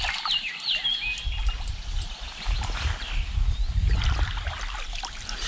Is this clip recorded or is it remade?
recorded